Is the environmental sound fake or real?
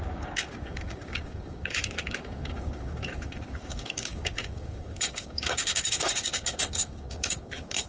fake